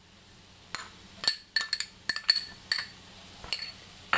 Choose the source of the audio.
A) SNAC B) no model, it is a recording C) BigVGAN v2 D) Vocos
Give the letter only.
B